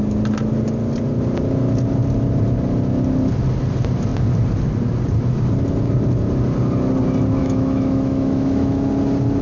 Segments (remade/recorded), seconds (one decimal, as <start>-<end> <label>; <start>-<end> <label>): 0.0-7.4 recorded; 7.4-8.9 remade; 8.9-9.4 recorded